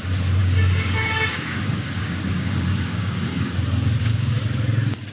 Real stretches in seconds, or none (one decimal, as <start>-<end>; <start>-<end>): 0.0-0.4; 3.5-4.0; 4.5-5.1